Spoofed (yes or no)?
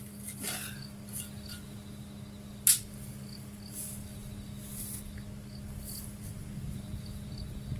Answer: no